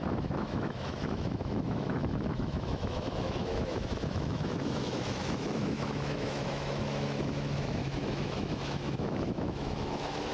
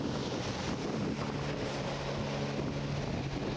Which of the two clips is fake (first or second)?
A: first